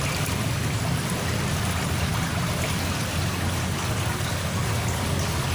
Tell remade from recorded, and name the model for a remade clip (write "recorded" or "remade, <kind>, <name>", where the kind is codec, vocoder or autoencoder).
recorded